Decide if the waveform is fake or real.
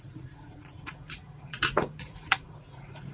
fake